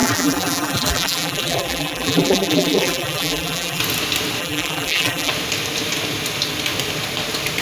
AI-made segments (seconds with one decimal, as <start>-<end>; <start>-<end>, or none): 0.0-3.8; 4.4-5.3